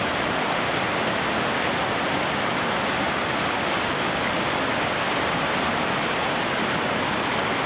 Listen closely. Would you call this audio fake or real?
real